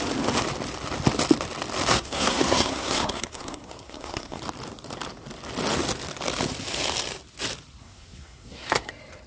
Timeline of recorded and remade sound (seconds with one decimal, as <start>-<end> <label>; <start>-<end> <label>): 0.0-1.9 recorded; 1.9-4.4 remade; 4.4-7.8 recorded; 7.8-8.9 remade; 8.9-9.3 recorded